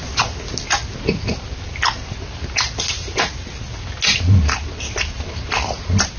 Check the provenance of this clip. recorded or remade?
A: recorded